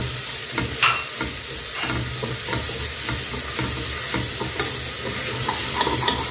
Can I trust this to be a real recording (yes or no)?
yes